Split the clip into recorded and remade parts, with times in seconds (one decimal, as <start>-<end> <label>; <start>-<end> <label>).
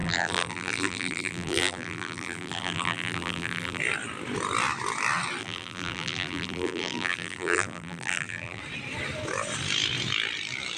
0.0-3.8 remade; 3.8-5.4 recorded; 5.4-8.6 remade; 8.6-10.8 recorded